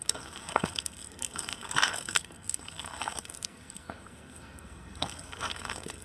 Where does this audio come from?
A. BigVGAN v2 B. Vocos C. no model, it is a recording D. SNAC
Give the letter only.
D